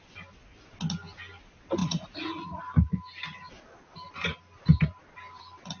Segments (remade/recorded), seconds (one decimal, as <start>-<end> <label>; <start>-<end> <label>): 0.0-1.8 recorded; 1.8-2.6 remade; 2.6-5.8 recorded